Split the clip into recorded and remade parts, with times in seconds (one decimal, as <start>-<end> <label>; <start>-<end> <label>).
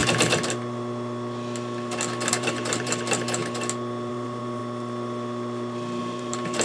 0.0-2.3 recorded; 2.3-3.4 remade; 3.4-4.1 recorded; 4.1-4.6 remade; 4.6-6.0 recorded; 6.0-6.6 remade